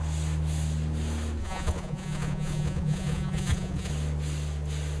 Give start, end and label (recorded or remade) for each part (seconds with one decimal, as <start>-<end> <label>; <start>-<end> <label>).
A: 0.0-1.4 recorded; 1.4-3.9 remade; 3.9-5.0 recorded